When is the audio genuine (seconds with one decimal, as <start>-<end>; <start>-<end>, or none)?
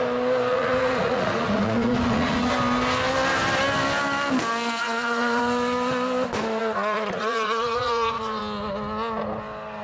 0.0-0.5; 2.5-4.8; 5.4-6.6; 8.4-9.8